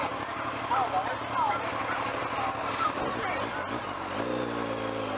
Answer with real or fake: real